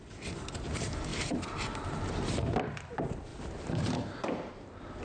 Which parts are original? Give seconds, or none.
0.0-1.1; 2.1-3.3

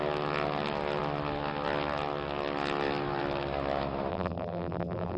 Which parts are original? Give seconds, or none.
0.0-4.1